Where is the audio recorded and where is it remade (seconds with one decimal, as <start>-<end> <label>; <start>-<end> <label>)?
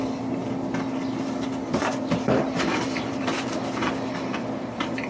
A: 0.0-1.7 recorded; 1.7-3.9 remade; 3.9-5.1 recorded